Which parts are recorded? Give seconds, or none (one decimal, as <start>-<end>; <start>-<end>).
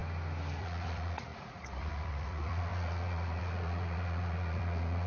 0.0-0.6